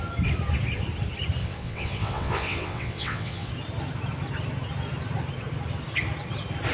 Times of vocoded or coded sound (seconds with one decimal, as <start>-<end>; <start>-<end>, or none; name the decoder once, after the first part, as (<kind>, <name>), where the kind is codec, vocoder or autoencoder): 1.4-3.5 (vocoder, WaveNeXt)